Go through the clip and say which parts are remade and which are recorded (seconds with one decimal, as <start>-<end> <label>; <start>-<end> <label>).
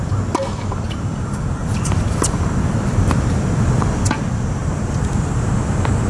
0.0-1.6 recorded; 1.6-4.1 remade; 4.1-4.6 recorded; 4.6-5.5 remade; 5.5-6.1 recorded